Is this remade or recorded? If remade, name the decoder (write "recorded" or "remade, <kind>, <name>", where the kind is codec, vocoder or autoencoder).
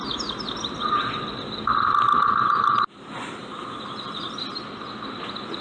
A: recorded